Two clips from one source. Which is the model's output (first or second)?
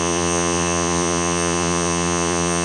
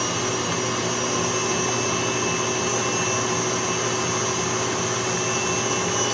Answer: first